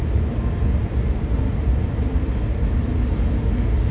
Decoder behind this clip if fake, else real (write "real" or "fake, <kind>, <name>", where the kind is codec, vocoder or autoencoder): real